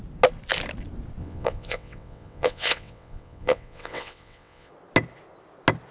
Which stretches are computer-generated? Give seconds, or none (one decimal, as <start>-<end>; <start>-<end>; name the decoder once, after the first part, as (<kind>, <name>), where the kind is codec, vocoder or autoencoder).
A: 1.2-4.7 (vocoder, WaveNeXt)